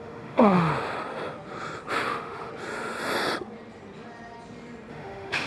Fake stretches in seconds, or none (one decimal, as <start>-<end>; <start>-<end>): 0.0-0.7; 1.9-2.5; 4.9-5.5